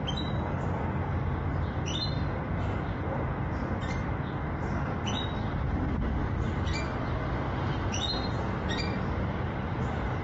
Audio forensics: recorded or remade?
recorded